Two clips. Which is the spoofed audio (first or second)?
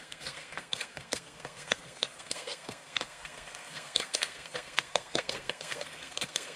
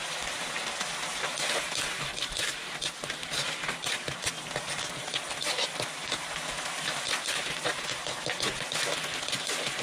first